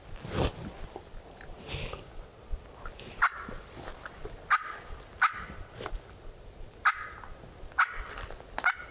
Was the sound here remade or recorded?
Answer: recorded